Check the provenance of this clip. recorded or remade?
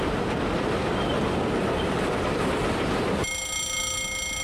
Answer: recorded